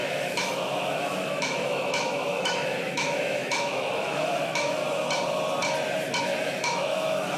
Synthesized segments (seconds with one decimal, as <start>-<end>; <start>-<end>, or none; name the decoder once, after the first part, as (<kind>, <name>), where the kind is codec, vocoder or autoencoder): 0.0-4.8 (autoencoder, DAC-VAE); 6.2-7.4